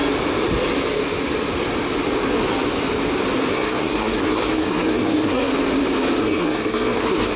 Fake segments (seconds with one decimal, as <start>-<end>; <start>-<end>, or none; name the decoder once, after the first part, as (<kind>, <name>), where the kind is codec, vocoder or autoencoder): 3.5-5.5 (codec, SNAC); 6.2-7.4